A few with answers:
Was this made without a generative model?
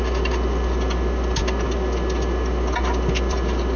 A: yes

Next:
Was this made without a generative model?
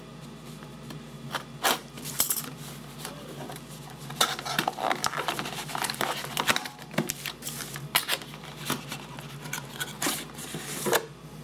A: yes